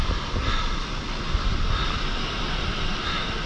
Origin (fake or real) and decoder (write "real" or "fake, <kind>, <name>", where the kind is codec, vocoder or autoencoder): real